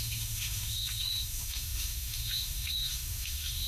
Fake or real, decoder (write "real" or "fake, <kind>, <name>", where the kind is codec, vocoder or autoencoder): fake, autoencoder, DAC-VAE